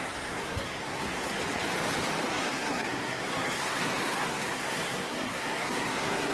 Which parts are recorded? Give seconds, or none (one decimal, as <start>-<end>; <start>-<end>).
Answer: 1.4-2.3